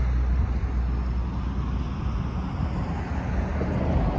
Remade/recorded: recorded